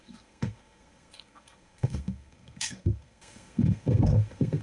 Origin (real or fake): fake